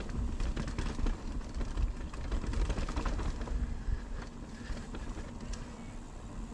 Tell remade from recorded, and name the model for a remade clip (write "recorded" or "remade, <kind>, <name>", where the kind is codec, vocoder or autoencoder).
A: recorded